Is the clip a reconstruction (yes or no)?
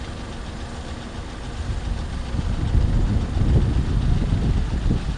no